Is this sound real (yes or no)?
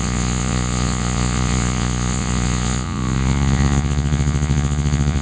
no